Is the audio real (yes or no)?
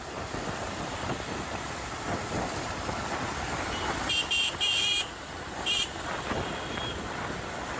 no